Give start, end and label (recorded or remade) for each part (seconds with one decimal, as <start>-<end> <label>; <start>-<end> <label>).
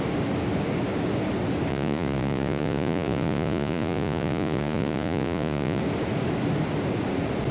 0.0-1.7 recorded; 1.7-5.8 remade; 5.8-7.5 recorded